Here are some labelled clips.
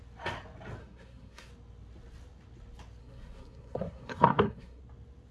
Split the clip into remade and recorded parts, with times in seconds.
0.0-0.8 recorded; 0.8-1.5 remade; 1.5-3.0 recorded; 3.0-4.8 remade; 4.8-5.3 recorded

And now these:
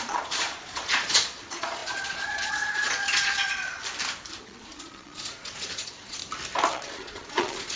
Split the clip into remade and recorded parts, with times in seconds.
0.0-3.8 remade; 3.8-4.4 recorded; 4.4-6.2 remade; 6.2-6.7 recorded; 6.7-7.8 remade

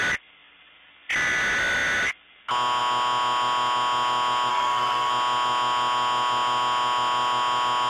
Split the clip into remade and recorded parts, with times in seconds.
0.0-4.5 recorded; 4.5-5.1 remade; 5.1-7.9 recorded

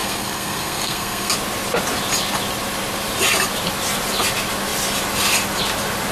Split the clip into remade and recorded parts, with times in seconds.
0.0-1.3 remade; 1.3-6.1 recorded

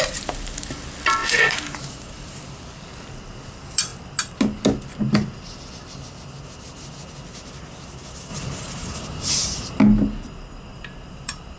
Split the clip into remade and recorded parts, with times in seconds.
0.0-1.2 recorded; 1.2-2.4 remade; 2.4-8.3 recorded; 8.3-9.8 remade; 9.8-10.7 recorded; 10.7-11.6 remade

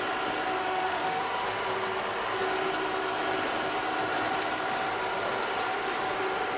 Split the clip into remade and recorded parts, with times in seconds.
0.0-0.6 recorded; 0.6-1.2 remade; 1.2-6.6 recorded